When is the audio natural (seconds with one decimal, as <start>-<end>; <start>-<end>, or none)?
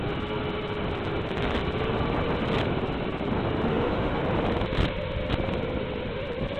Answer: 0.0-3.7; 4.2-6.6